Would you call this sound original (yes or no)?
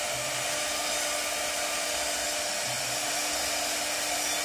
yes